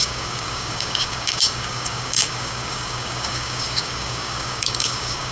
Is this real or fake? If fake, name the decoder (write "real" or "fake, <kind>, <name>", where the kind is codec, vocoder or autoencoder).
fake, codec, DAC